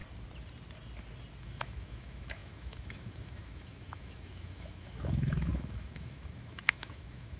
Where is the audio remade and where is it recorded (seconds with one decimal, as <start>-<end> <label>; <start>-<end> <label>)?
0.0-1.4 recorded; 1.4-7.4 remade

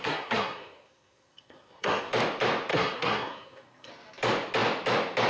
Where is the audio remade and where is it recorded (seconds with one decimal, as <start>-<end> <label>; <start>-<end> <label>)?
0.0-2.1 remade; 2.1-2.7 recorded; 2.7-3.9 remade; 3.9-5.3 recorded

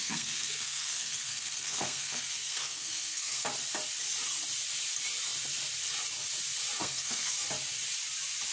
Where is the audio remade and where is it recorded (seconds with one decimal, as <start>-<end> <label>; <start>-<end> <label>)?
0.0-3.5 remade; 3.5-6.8 recorded; 6.8-7.3 remade; 7.3-8.5 recorded

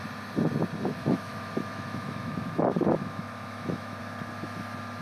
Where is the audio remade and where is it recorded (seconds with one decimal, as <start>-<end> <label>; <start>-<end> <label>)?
0.0-1.0 recorded; 1.0-4.0 remade; 4.0-5.0 recorded